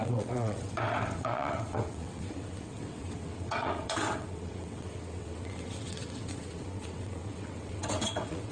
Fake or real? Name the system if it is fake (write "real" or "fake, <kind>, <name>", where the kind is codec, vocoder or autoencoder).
fake, vocoder, WaveNeXt